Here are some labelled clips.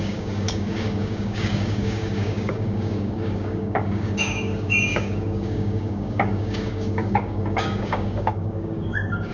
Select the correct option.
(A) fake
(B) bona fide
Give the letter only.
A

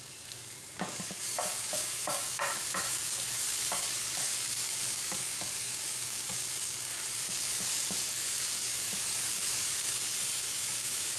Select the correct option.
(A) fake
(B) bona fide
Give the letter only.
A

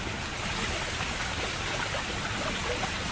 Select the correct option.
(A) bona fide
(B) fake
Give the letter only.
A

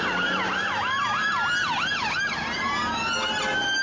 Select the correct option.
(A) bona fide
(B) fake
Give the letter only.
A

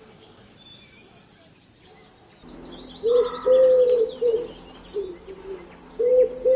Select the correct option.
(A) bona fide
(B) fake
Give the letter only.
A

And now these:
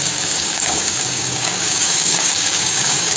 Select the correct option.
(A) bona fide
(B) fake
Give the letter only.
B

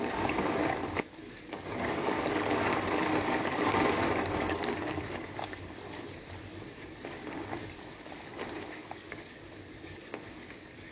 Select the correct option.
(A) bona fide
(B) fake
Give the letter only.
B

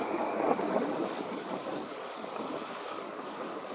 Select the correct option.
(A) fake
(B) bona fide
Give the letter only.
A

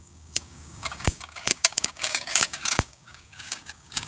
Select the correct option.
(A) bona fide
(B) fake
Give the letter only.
B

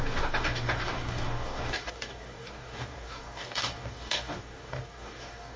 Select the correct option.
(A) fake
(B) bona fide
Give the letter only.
A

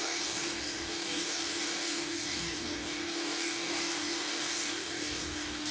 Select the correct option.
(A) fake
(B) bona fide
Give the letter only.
A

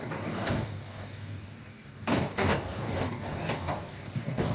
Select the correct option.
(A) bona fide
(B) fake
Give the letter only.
B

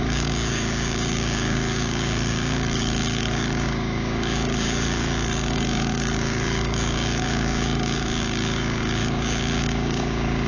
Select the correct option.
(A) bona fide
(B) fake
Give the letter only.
B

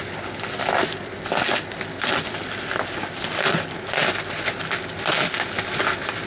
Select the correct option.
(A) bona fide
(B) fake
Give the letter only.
A